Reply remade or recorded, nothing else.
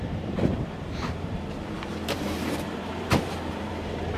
remade